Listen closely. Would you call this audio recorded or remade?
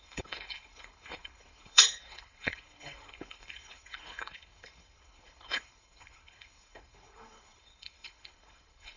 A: remade